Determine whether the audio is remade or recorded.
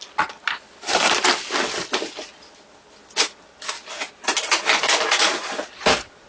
recorded